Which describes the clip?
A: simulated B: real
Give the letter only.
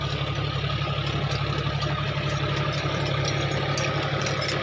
B